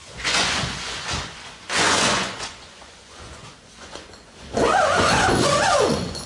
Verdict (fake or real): fake